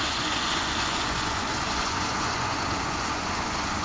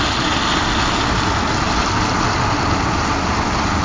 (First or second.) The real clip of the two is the second